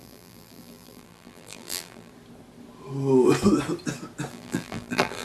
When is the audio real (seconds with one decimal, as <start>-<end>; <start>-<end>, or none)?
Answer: 2.1-4.3